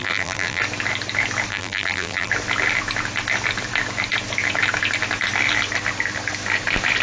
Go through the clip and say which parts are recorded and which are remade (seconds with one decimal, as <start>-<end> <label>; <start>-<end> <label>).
0.0-0.6 remade; 0.6-1.5 recorded; 1.5-2.3 remade; 2.3-7.0 recorded